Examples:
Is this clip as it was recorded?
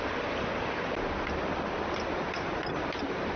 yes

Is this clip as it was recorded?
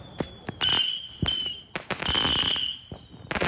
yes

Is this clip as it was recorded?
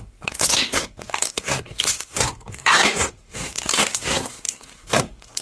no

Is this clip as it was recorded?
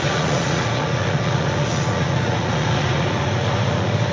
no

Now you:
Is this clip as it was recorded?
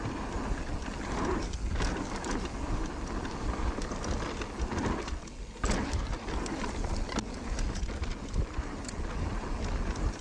yes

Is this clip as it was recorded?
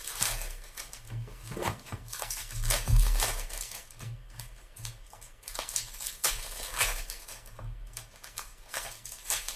no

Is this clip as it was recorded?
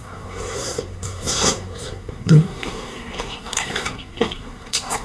no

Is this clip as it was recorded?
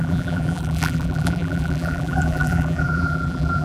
no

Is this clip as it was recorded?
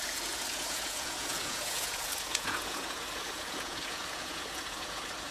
no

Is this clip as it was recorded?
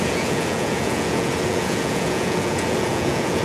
no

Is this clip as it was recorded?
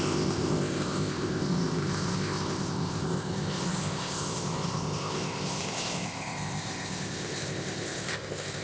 no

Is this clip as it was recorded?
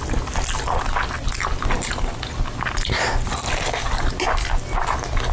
yes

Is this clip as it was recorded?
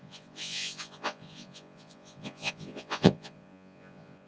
no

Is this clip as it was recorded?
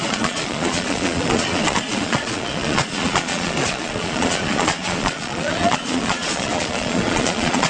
no